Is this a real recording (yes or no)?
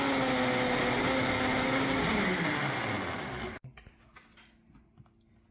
yes